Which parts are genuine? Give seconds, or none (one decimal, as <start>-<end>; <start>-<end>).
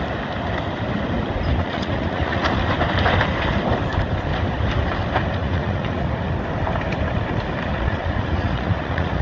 0.0-1.5; 2.5-5.4; 6.1-7.7